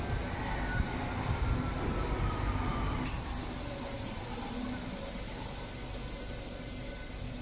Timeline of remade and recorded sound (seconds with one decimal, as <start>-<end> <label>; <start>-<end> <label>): 0.0-7.4 recorded